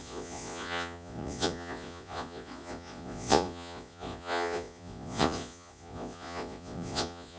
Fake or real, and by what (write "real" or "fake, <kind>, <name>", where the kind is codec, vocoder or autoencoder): fake, vocoder, Vocos